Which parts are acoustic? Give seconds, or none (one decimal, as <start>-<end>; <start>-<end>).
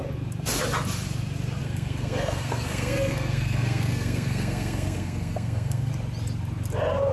0.0-1.6; 5.9-7.1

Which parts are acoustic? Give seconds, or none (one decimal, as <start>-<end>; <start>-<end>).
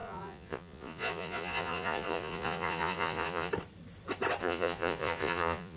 3.5-4.4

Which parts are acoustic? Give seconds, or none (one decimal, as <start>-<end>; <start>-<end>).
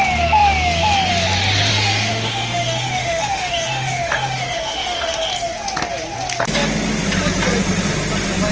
0.0-1.7; 5.3-8.5